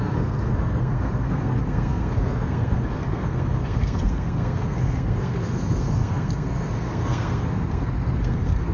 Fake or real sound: fake